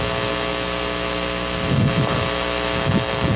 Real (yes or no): yes